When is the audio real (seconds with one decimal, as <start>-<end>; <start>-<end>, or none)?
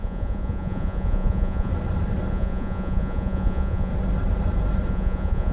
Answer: 1.7-2.3; 3.9-4.9